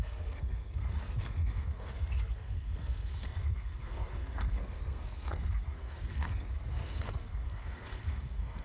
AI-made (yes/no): yes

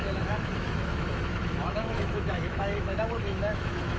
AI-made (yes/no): yes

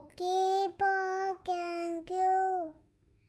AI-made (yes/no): yes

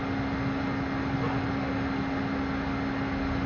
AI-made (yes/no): no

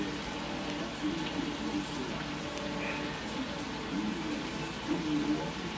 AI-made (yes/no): no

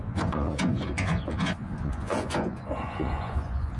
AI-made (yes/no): yes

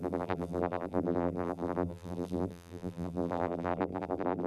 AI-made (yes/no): yes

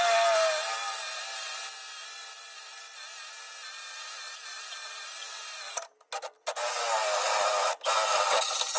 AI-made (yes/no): no